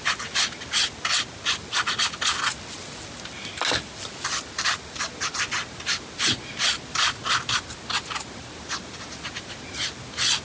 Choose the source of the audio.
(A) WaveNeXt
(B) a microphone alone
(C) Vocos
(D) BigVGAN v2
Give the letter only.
B